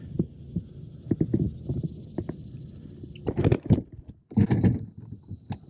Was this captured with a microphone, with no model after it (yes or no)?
yes